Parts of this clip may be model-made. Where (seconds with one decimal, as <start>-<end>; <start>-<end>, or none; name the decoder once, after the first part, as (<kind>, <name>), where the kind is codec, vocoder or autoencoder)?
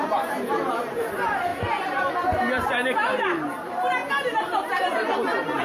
0.0-5.6 (vocoder, BigVGAN v2)